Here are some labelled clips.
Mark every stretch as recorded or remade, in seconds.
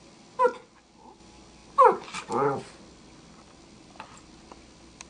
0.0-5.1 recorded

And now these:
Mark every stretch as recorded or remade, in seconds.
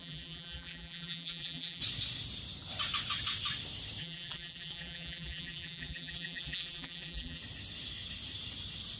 0.0-1.8 remade; 1.8-4.0 recorded; 4.0-7.4 remade; 7.4-9.0 recorded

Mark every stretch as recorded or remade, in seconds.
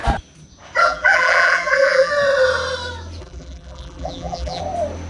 0.0-0.8 recorded; 0.8-2.1 remade; 2.1-3.2 recorded; 3.2-4.6 remade; 4.6-5.1 recorded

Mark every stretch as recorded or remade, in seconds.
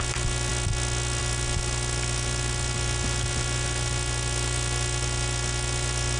0.0-6.2 recorded